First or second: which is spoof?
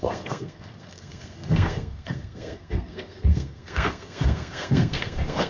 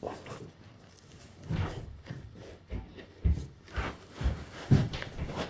first